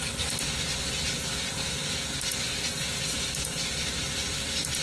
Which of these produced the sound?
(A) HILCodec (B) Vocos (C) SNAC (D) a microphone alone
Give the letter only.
D